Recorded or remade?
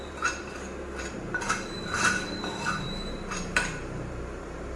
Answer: remade